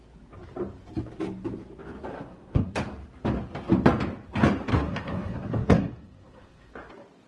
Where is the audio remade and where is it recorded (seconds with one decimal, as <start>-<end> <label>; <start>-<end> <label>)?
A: 0.0-2.1 recorded; 2.1-2.7 remade; 2.7-4.7 recorded; 4.7-6.7 remade; 6.7-7.3 recorded